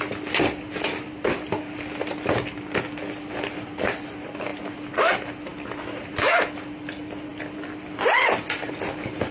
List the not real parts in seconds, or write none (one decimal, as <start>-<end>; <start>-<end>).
none